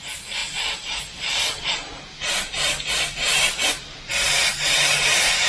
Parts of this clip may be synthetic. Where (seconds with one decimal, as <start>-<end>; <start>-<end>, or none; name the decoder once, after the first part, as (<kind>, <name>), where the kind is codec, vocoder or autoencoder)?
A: none

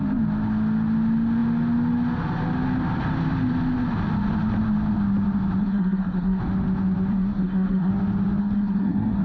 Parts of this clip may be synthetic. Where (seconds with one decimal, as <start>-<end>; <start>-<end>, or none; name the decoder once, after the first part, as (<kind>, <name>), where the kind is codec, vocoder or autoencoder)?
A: 5.6-6.4 (codec, SNAC); 7.1-7.9; 8.4-9.2

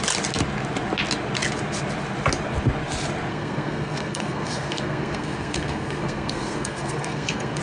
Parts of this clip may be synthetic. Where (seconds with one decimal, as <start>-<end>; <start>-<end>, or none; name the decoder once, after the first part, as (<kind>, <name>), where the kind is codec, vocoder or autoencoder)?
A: 3.3-7.6 (codec, SNAC)